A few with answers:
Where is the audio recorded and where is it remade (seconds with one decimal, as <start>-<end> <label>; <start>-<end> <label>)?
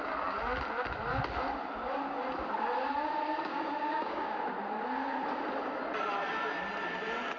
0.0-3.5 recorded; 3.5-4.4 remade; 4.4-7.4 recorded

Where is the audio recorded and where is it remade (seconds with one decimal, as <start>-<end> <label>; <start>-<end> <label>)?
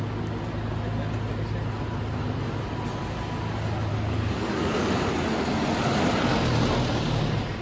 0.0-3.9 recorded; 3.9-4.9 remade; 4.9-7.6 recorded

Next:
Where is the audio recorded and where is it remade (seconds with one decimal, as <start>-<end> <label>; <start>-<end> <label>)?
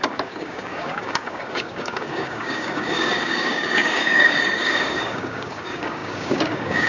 0.0-6.9 remade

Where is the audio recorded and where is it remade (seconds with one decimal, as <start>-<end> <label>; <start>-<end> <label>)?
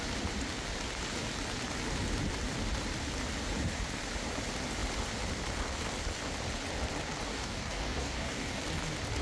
0.0-7.3 recorded; 7.3-8.6 remade; 8.6-9.2 recorded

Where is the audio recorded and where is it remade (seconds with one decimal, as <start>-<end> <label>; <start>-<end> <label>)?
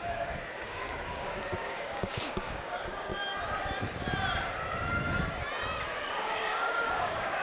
0.0-3.1 remade; 3.1-5.9 recorded; 5.9-7.4 remade